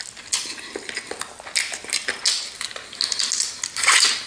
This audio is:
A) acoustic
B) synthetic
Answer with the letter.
A